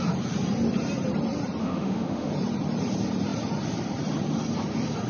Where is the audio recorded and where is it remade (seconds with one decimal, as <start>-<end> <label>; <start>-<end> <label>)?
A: 0.0-1.6 recorded; 1.6-2.3 remade; 2.3-5.1 recorded